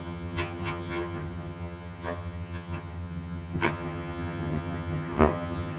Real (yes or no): no